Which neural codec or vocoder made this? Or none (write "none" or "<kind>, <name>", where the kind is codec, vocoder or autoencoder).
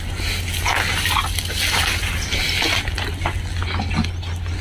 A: none